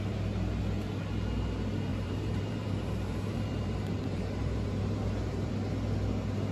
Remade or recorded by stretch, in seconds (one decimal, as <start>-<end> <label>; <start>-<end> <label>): 0.0-1.9 recorded; 1.9-5.5 remade; 5.5-6.5 recorded